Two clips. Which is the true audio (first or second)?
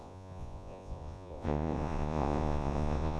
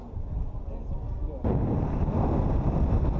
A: second